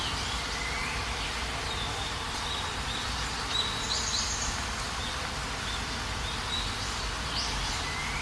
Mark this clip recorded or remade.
recorded